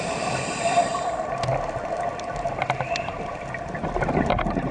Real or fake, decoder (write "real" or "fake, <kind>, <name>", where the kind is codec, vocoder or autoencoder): real